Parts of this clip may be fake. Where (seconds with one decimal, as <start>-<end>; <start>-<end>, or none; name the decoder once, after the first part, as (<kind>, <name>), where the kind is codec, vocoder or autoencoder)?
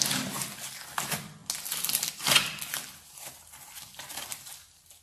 2.9-3.9 (vocoder, BigVGAN v2); 4.3-5.0